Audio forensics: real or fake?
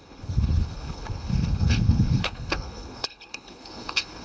fake